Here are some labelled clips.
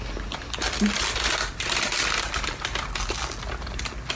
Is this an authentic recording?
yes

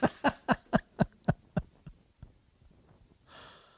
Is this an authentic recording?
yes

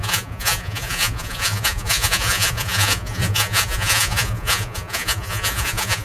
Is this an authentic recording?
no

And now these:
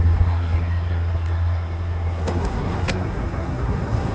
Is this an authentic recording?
no